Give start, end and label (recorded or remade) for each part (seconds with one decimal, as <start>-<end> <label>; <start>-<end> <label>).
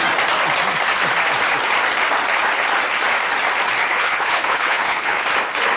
0.0-3.9 recorded; 3.9-5.2 remade; 5.2-5.8 recorded